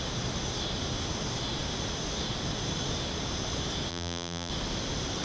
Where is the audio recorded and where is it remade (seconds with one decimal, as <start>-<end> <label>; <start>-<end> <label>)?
0.0-3.9 recorded; 3.9-4.5 remade; 4.5-5.2 recorded